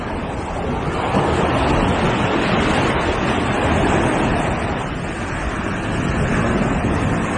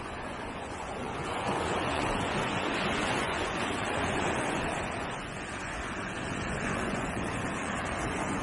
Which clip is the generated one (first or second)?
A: second